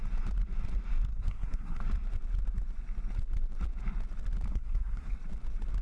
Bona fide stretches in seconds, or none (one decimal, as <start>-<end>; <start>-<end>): 0.0-1.1; 1.8-4.5; 5.1-5.8